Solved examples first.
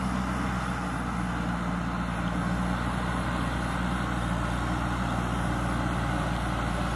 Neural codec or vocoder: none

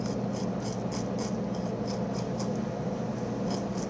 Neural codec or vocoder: none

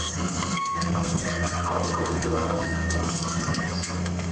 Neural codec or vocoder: codec, SNAC